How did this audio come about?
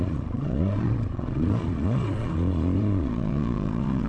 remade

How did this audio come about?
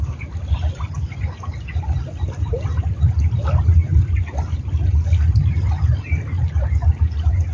recorded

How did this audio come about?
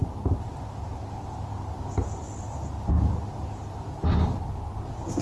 recorded